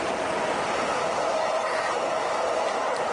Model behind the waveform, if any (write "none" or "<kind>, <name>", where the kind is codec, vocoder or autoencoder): none